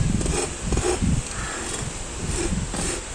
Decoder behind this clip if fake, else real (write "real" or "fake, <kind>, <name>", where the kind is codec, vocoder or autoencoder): real